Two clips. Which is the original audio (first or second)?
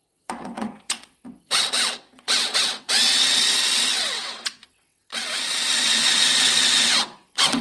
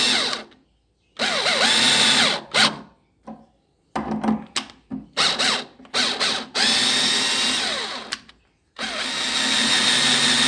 second